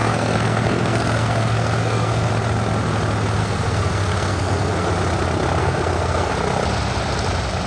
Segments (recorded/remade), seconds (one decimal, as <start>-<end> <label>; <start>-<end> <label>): 0.0-2.3 remade; 2.3-3.4 recorded; 3.4-4.9 remade; 4.9-5.6 recorded; 5.6-6.3 remade; 6.3-7.7 recorded